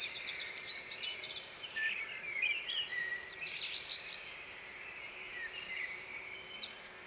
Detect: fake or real fake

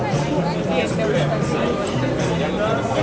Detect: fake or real real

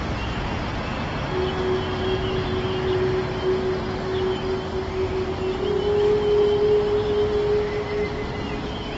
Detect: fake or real real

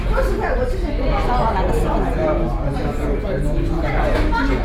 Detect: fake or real real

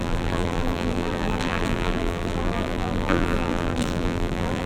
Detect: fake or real fake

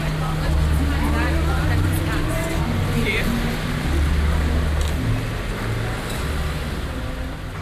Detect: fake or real real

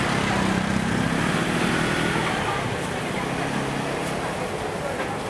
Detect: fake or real fake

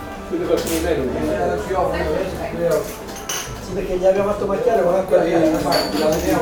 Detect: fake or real real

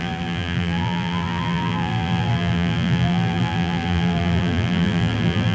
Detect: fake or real fake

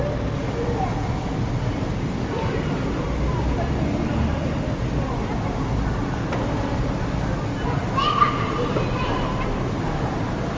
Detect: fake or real real